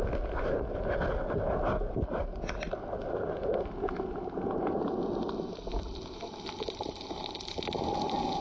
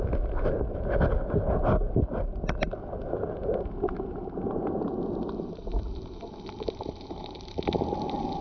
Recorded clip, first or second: first